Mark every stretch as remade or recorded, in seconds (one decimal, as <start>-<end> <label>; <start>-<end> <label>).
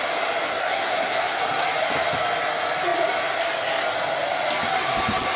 0.0-0.5 recorded; 0.5-1.4 remade; 1.4-5.4 recorded